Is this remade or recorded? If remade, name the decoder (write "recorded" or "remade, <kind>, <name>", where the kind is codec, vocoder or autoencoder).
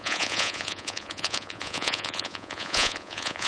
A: remade, vocoder, Vocos